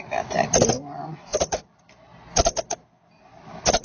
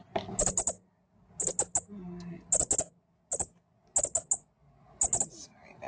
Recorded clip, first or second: second